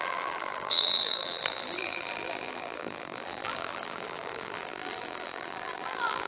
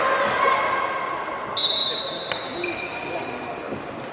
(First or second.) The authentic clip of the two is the second